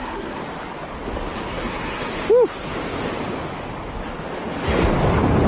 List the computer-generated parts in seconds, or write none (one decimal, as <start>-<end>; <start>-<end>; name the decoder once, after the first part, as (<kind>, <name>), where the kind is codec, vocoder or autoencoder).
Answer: 0.0-0.4 (codec, SNAC); 1.5-2.1